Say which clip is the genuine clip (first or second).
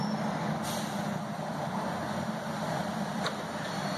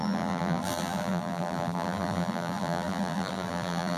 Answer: first